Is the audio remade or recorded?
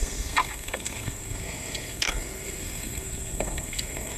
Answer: remade